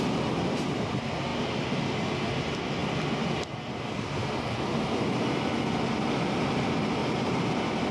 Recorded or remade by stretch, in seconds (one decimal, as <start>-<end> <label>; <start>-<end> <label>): 0.0-2.8 recorded; 2.8-6.3 remade; 6.3-7.0 recorded; 7.0-7.9 remade